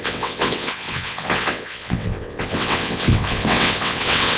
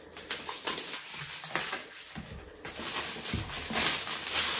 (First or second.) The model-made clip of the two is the first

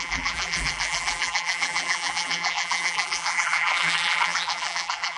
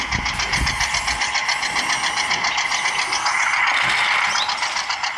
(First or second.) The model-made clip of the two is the first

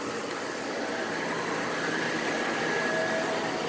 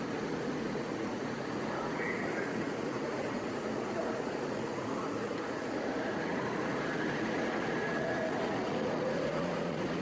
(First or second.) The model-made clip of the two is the second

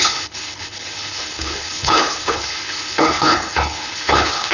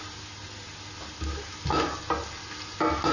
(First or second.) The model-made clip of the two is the first